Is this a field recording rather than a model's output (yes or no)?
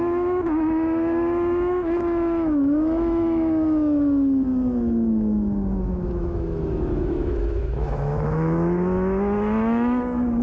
no